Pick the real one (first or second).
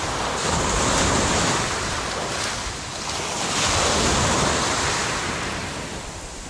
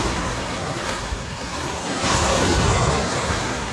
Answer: first